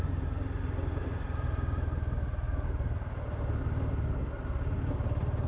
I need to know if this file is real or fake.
real